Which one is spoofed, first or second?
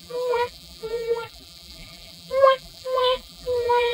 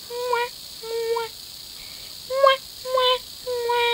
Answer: first